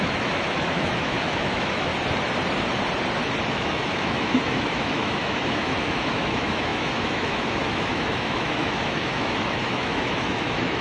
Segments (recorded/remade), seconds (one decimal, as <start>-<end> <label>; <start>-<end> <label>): 0.0-1.9 remade; 1.9-3.5 recorded; 3.5-10.8 remade